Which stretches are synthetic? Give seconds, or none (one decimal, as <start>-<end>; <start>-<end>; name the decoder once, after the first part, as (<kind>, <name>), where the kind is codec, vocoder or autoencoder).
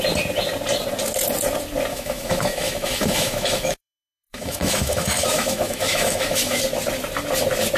1.9-6.6 (autoencoder, DAC-VAE)